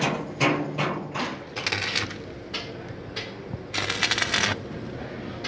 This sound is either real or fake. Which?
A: real